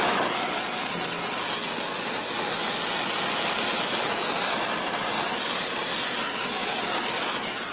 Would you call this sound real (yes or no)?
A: yes